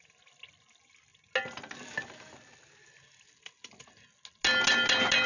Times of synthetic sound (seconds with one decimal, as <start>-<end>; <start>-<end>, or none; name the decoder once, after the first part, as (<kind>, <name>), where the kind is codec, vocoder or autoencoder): none